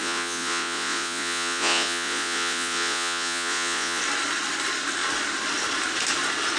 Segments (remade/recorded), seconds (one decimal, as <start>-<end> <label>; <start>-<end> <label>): 0.0-4.0 remade; 4.0-6.6 recorded